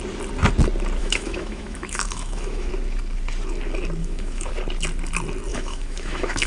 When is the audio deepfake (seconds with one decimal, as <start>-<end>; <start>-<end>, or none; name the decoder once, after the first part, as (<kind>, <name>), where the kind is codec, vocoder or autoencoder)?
1.0-2.7 (autoencoder, DAC-VAE); 4.0-4.5; 5.5-6.5